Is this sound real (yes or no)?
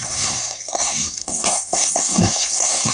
no